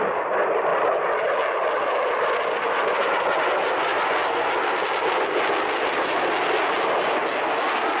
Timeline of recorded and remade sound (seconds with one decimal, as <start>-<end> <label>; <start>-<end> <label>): 0.0-8.0 recorded